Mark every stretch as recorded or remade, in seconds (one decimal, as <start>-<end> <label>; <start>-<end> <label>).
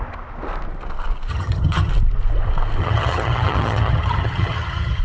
0.0-1.3 recorded; 1.3-1.9 remade; 1.9-2.8 recorded; 2.8-5.0 remade